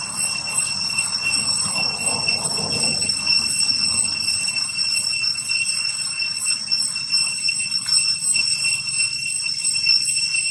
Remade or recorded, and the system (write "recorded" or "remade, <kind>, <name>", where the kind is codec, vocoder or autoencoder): recorded